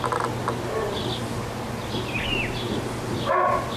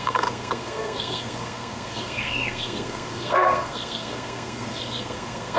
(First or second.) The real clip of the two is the first